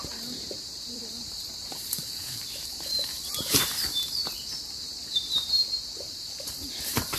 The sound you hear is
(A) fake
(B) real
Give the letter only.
A